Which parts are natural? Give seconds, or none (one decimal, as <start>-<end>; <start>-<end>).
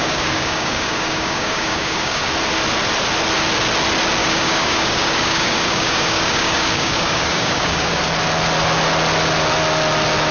2.2-4.2; 8.0-10.3